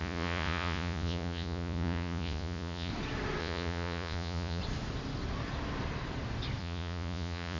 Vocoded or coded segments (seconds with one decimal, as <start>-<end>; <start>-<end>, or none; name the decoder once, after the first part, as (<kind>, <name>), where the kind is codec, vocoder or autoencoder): 0.0-2.9 (vocoder, Vocos); 3.4-4.6; 6.6-7.6